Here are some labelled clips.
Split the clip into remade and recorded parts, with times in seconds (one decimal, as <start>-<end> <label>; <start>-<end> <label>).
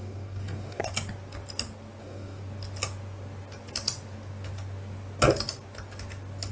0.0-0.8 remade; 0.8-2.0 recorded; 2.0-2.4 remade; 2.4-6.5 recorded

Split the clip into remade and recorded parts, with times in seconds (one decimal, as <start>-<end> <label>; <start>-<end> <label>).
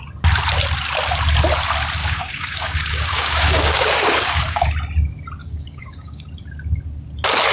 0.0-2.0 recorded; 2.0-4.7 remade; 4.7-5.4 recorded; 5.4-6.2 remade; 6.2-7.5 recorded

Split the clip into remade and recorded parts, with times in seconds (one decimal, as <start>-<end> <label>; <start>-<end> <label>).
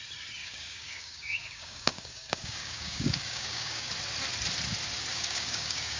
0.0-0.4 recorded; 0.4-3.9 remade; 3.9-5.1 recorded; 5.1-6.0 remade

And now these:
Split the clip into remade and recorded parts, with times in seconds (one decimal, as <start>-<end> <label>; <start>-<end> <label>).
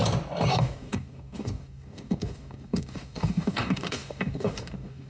0.0-0.5 recorded; 0.5-5.1 remade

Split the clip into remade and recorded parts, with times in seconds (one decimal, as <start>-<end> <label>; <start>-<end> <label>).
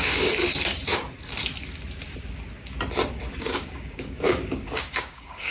0.0-0.4 remade; 0.4-3.4 recorded; 3.4-5.5 remade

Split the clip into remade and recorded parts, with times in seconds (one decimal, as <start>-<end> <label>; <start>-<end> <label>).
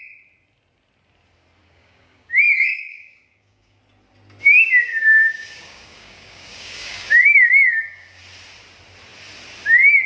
0.0-1.6 recorded; 1.6-3.8 remade; 3.8-4.9 recorded; 4.9-8.2 remade; 8.2-10.1 recorded